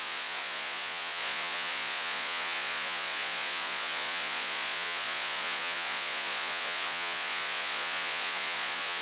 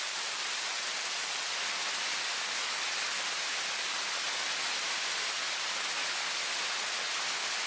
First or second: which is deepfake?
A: first